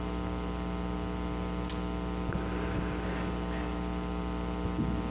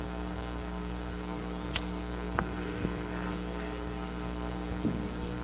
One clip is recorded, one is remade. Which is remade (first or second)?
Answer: second